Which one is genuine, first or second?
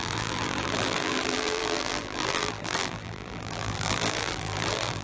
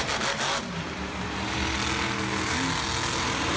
second